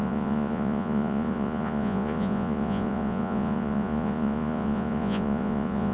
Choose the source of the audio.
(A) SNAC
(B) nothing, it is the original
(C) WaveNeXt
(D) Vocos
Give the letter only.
D